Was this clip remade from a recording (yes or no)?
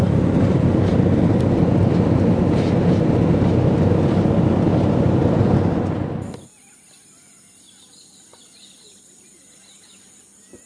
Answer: no